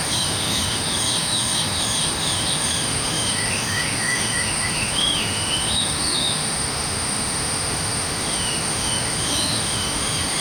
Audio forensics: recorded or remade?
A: remade